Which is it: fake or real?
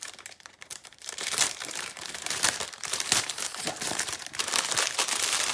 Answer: fake